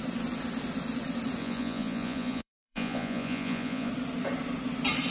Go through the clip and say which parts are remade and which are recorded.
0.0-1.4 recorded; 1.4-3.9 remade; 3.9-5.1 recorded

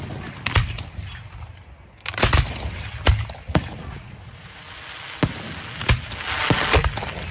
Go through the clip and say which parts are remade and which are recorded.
0.0-3.5 recorded; 3.5-4.6 remade; 4.6-7.3 recorded

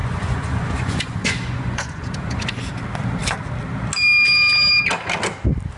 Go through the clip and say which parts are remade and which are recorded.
0.0-2.8 remade; 2.8-5.8 recorded

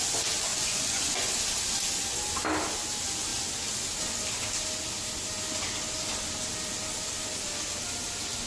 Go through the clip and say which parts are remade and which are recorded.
0.0-0.5 recorded; 0.5-1.3 remade; 1.3-8.5 recorded